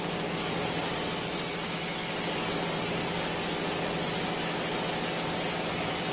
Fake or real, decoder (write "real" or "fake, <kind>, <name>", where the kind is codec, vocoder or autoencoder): real